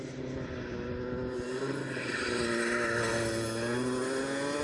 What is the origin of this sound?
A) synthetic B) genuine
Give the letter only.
B